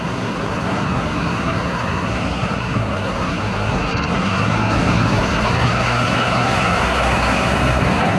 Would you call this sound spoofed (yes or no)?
yes